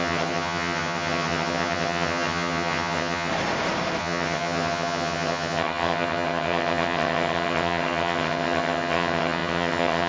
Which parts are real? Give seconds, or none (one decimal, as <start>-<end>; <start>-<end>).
3.3-4.0